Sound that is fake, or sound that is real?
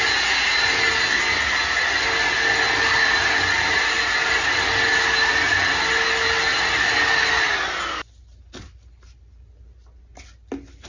real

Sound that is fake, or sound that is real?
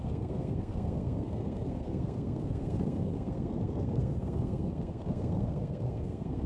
fake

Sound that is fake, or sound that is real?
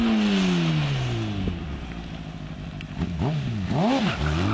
real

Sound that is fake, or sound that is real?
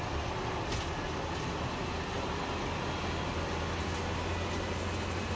real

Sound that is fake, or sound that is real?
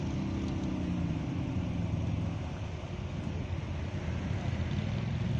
real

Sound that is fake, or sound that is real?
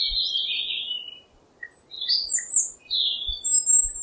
real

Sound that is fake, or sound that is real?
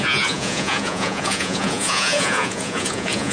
fake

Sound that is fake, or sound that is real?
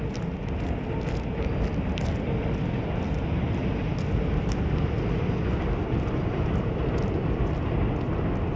real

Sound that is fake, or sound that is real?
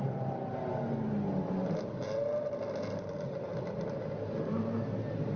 real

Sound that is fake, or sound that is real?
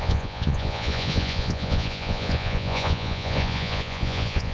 fake